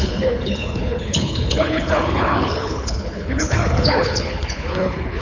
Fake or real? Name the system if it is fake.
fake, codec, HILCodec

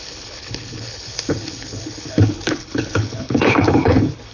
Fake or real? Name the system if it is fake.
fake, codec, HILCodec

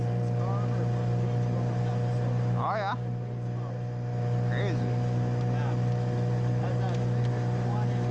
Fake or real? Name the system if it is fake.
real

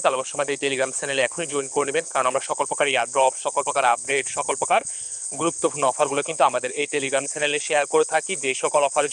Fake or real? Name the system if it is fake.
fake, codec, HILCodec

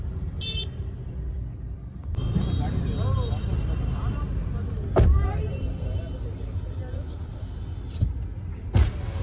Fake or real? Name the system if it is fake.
real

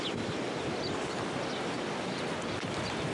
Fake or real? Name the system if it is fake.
real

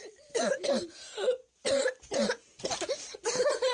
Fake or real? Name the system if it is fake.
real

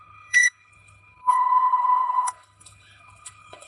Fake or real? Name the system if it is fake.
fake, codec, HILCodec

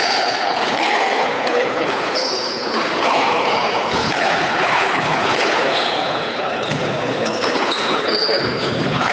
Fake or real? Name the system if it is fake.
fake, codec, HILCodec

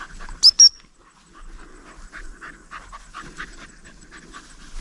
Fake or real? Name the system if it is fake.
real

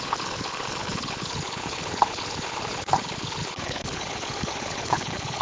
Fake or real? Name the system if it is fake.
fake, codec, HILCodec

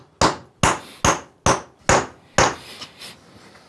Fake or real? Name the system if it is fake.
real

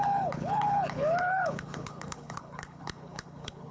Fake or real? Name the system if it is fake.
fake, codec, HILCodec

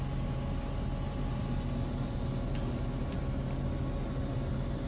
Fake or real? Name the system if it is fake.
real